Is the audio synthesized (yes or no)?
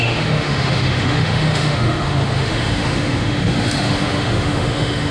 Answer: yes